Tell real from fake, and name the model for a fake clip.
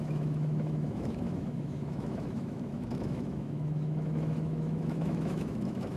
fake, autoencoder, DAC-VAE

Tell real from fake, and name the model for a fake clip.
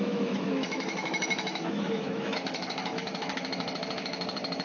fake, autoencoder, DAC-VAE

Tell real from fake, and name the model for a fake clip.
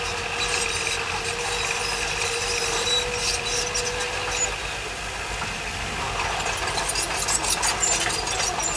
real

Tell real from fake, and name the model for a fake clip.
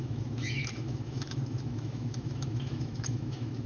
fake, autoencoder, DAC-VAE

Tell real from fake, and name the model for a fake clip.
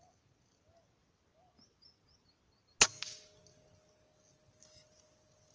real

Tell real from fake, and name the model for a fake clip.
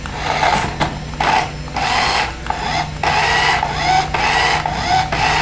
real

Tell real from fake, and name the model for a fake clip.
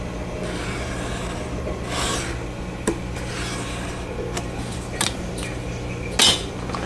real